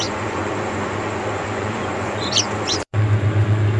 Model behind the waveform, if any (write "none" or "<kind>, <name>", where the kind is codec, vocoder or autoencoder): vocoder, Vocos